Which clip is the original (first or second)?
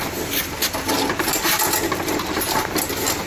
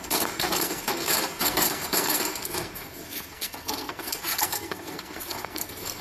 first